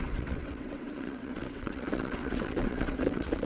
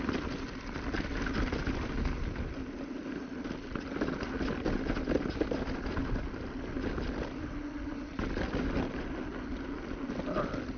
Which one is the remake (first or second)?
first